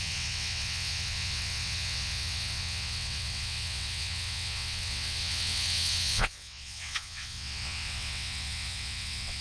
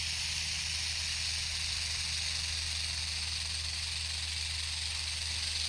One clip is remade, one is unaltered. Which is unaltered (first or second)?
second